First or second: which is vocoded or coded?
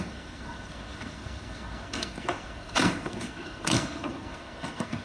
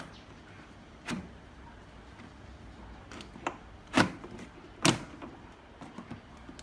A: first